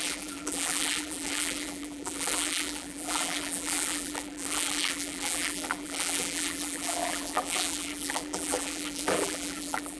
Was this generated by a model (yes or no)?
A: yes